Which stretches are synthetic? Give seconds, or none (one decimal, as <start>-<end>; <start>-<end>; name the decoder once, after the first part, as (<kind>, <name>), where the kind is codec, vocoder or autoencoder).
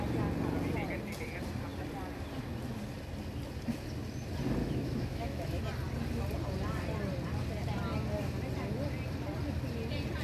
4.6-5.6 (autoencoder, DAC-VAE)